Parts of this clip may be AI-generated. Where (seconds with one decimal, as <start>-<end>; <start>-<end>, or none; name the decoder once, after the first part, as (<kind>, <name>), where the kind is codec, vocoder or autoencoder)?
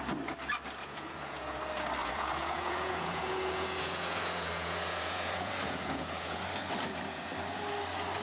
0.8-1.6 (vocoder, Vocos); 2.0-6.4